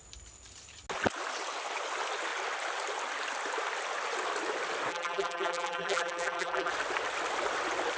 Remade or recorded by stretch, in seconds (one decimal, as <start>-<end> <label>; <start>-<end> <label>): 0.0-4.9 recorded; 4.9-6.7 remade; 6.7-8.0 recorded